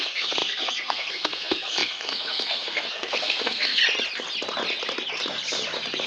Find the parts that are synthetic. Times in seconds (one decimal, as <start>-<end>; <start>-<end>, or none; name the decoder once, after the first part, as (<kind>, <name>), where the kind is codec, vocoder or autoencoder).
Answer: 0.0-3.8 (codec, SNAC)